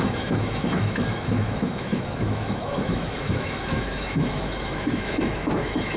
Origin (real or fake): fake